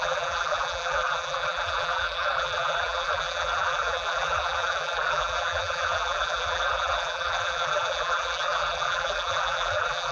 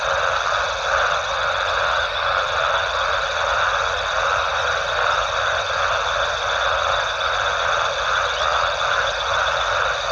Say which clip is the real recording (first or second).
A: second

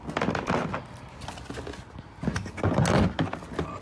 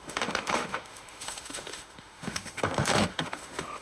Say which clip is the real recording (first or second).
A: first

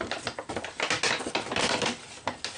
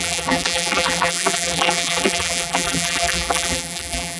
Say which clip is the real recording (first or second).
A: first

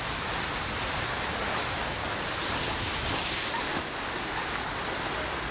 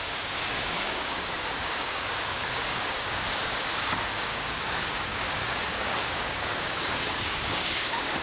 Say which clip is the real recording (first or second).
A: first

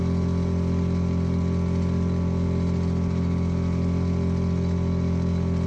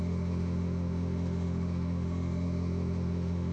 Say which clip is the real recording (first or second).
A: first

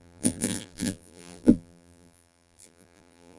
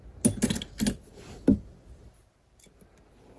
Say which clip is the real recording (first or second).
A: second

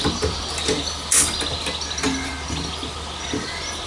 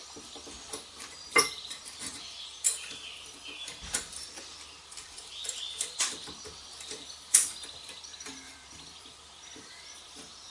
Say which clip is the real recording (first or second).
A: first